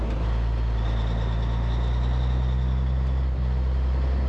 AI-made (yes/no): no